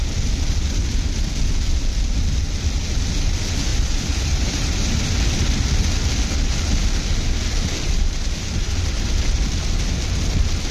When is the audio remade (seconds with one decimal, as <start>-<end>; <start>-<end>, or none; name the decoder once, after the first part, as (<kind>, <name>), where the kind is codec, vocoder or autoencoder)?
3.7-5.0 (vocoder, BigVGAN v2)